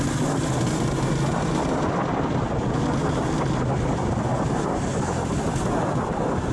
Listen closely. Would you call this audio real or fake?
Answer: real